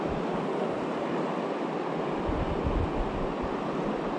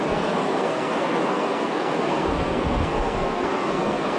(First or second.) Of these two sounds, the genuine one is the first